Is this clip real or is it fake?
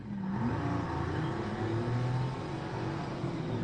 real